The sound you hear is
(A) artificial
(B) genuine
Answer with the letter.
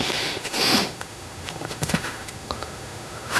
A